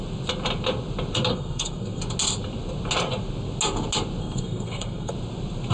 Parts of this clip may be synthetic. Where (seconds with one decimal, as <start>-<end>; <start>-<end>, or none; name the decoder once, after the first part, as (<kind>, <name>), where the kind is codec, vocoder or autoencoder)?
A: 1.3-2.0 (codec, SNAC); 4.2-5.1